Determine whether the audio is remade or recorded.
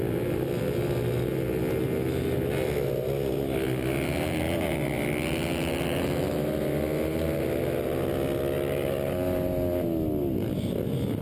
recorded